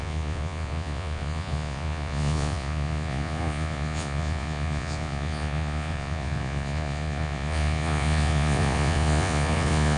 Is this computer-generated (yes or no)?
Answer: yes